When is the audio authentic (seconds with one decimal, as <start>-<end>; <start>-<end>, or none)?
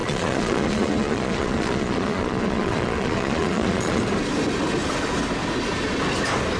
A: 4.0-6.6